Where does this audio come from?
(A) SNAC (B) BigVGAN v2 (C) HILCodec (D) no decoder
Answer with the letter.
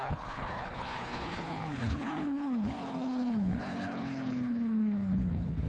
C